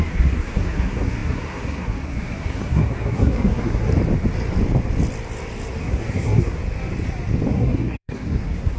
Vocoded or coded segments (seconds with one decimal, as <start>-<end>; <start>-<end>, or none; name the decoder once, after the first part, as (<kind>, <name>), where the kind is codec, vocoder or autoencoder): 0.0-3.9 (codec, SNAC); 5.8-6.6; 7.5-8.8